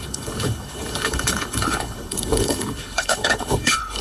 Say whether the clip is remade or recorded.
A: remade